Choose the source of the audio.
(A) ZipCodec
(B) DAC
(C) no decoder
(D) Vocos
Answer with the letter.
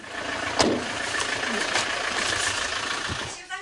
C